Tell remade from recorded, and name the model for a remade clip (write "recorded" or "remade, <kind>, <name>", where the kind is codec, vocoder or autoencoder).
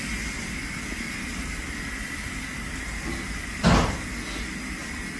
recorded